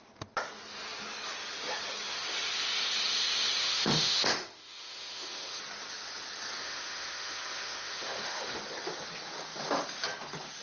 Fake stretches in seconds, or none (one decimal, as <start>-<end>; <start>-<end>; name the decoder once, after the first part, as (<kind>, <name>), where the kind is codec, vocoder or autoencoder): 3.6-5.6 (autoencoder, DAC-VAE); 6.6-8.6

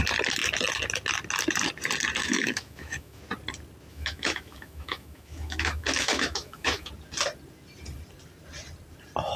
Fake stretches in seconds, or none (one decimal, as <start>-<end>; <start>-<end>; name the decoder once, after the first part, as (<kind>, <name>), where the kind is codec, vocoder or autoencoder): 2.2-3.2 (autoencoder, DAC-VAE); 3.9-6.9

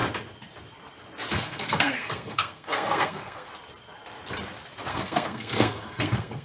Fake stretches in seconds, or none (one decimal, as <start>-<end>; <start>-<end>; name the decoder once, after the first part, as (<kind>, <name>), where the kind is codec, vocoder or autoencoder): 1.3-3.5 (codec, SNAC); 4.9-6.4

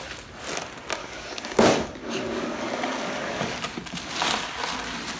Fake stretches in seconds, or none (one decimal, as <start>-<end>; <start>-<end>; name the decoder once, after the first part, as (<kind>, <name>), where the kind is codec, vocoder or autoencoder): 1.0-3.6 (codec, DAC)